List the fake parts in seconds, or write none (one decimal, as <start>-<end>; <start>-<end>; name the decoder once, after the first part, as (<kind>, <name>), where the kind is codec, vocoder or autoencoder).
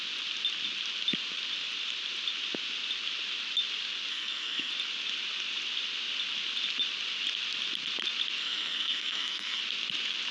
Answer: 4.1-4.7 (codec, SNAC); 8.4-9.6